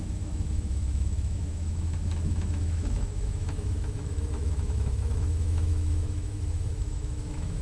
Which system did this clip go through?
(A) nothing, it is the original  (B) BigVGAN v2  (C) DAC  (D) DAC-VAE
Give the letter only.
D